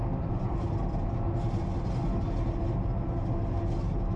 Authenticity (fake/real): real